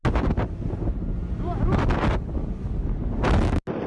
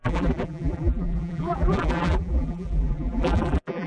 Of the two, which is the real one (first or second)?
first